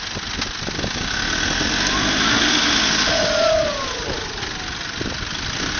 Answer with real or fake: real